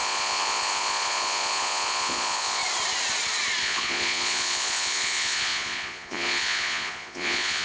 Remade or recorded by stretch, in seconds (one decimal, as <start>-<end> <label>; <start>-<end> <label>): 0.0-2.6 remade; 2.6-3.6 recorded; 3.6-7.6 remade